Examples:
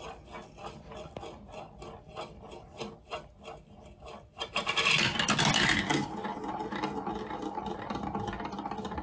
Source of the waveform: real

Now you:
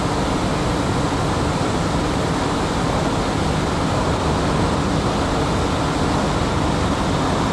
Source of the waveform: real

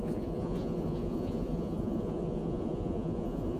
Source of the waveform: fake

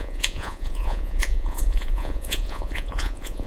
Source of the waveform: fake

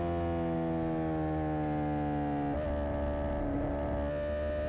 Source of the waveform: real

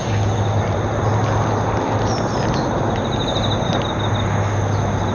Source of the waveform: real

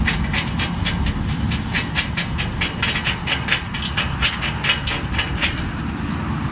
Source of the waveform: real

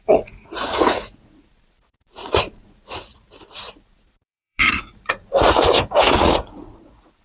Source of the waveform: fake